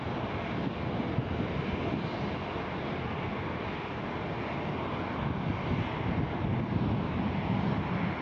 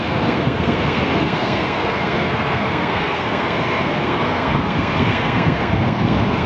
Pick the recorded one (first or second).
first